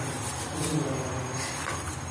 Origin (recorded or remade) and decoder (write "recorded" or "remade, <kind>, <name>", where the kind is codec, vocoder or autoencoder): recorded